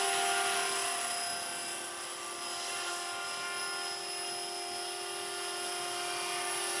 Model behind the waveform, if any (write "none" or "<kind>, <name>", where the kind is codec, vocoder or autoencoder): none